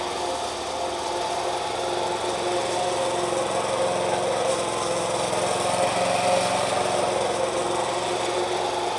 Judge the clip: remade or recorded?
recorded